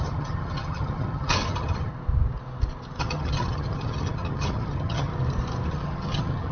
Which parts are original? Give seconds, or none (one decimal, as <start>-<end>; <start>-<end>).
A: 1.9-3.0; 5.1-5.7

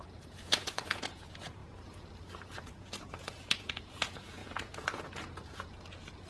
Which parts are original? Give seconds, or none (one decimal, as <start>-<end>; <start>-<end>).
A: 1.6-2.4

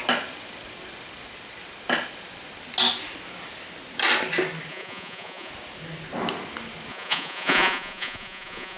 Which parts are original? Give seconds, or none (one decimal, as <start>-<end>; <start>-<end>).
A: 0.0-4.7; 5.5-6.9

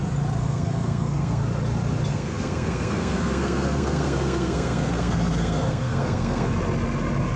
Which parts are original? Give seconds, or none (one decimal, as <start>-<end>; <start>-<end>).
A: 0.0-0.4; 1.4-2.1; 6.5-7.4

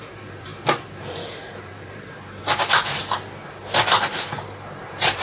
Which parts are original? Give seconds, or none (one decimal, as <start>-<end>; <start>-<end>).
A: 0.5-1.0; 2.4-4.8

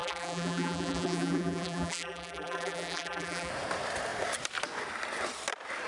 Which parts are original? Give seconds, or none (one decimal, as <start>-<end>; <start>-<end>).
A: 3.5-5.9

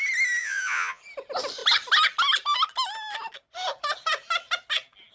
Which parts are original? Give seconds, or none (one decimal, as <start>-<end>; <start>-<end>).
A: 0.0-0.4; 1.0-5.1

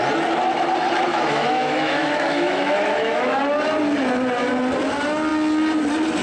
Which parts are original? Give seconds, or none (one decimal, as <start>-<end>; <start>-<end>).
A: 0.0-1.1; 3.4-6.2